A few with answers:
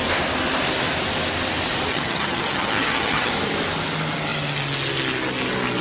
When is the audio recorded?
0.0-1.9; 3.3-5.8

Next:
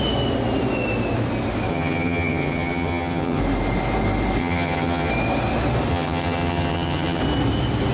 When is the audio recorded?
0.0-1.7; 3.4-4.4; 5.1-5.9; 7.2-7.9

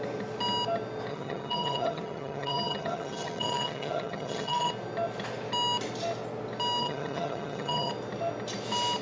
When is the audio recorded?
0.0-1.1; 4.7-6.8; 7.9-9.0

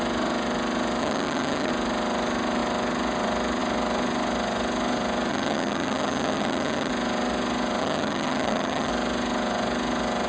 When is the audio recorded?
0.0-1.0; 1.7-5.3; 6.9-7.8; 8.9-10.3